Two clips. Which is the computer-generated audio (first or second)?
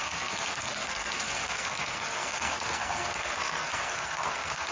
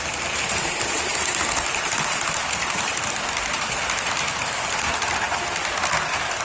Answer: first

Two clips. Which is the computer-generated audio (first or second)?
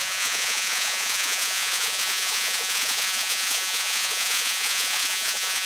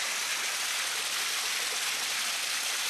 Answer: first